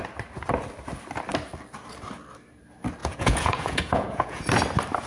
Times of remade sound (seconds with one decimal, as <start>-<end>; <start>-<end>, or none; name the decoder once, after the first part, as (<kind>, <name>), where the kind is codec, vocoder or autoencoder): 3.0-4.4 (vocoder, Vocos)